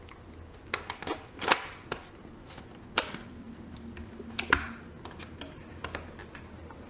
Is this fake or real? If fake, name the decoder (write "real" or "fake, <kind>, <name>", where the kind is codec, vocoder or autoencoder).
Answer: real